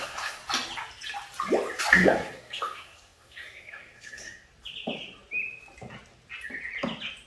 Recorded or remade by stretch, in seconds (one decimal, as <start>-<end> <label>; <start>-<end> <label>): 0.0-0.4 remade; 0.4-1.8 recorded; 1.8-4.5 remade; 4.5-7.3 recorded